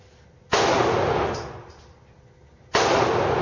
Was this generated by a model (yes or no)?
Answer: no